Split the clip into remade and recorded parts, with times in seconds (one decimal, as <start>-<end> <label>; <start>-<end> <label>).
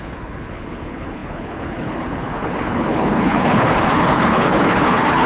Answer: 0.0-5.3 remade